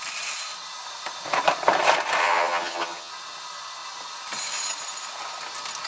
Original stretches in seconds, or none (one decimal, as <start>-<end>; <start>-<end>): 0.0-2.2; 3.1-5.9